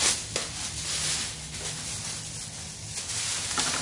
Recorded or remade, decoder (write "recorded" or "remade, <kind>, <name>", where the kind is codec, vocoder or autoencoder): recorded